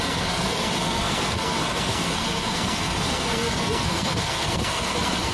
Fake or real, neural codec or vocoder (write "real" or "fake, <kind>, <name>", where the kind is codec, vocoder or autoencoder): fake, codec, SNAC